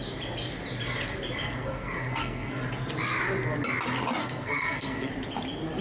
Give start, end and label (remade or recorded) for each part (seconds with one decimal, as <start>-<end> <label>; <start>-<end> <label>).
0.0-1.4 recorded; 1.4-2.6 remade; 2.6-4.2 recorded; 4.2-5.1 remade; 5.1-5.8 recorded